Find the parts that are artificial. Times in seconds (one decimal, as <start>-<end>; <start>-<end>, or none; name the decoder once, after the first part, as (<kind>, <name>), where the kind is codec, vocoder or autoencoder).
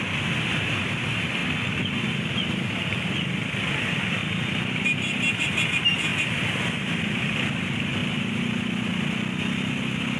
4.2-4.8 (vocoder, BigVGAN v2); 6.1-7.0